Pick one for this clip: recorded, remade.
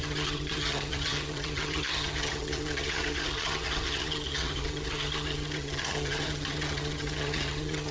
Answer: remade